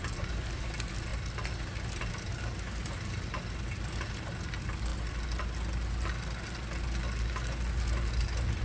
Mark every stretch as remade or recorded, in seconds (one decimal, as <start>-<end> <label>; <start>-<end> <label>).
0.0-8.6 recorded